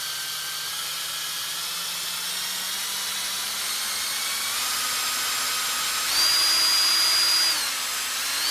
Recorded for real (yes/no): yes